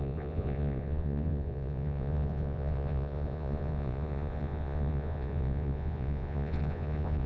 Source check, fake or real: fake